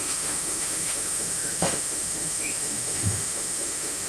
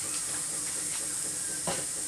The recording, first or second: second